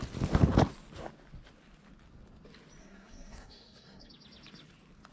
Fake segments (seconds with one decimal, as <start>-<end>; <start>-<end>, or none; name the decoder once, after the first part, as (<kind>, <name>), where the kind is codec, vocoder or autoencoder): 2.8-4.1 (codec, SNAC)